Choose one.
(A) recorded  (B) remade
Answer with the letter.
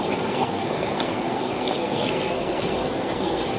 B